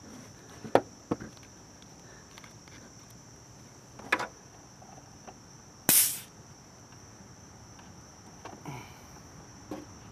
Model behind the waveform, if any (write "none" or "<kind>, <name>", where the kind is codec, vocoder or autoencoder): none